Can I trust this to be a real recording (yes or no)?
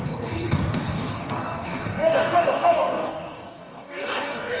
no